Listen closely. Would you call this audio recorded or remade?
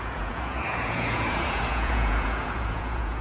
remade